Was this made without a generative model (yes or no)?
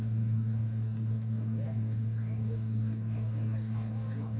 no